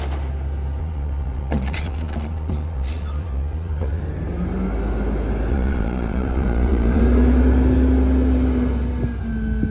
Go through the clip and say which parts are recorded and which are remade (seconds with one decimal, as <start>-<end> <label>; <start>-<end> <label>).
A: 0.0-0.8 recorded; 0.8-4.0 remade; 4.0-5.5 recorded; 5.5-7.0 remade; 7.0-9.7 recorded